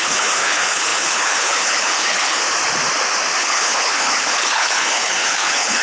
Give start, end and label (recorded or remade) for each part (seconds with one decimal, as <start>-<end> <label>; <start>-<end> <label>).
0.0-2.4 remade; 2.4-3.4 recorded; 3.4-5.8 remade